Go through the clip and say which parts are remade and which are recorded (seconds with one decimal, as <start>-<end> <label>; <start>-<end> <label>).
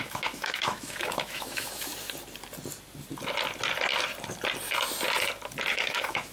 0.0-1.9 remade; 1.9-5.7 recorded; 5.7-6.3 remade